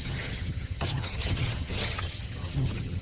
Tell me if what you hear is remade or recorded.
remade